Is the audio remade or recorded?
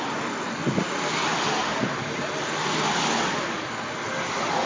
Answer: recorded